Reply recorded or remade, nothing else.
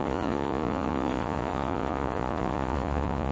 remade